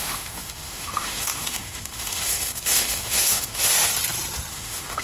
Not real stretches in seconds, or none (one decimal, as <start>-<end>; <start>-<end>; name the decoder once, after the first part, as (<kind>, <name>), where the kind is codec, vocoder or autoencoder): 0.0-3.9 (autoencoder, DAC-VAE); 4.5-5.0